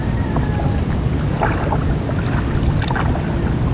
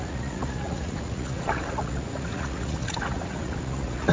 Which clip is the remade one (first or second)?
second